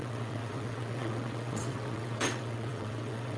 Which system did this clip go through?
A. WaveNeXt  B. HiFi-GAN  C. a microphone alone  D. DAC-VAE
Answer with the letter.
A